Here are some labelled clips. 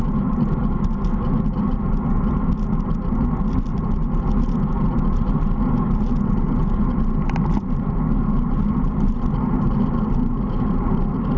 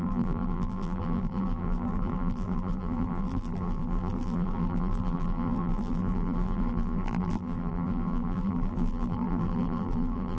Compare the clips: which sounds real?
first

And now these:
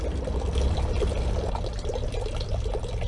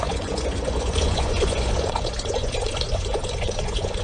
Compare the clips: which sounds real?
first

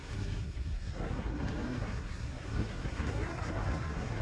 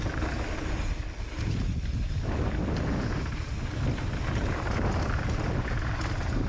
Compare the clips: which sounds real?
second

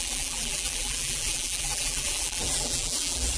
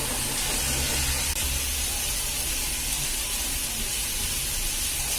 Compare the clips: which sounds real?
second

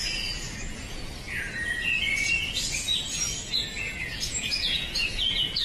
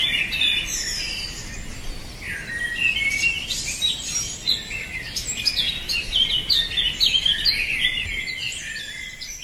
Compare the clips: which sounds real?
second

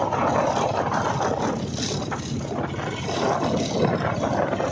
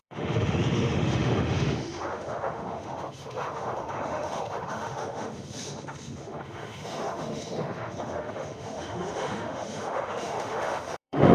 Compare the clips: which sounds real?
first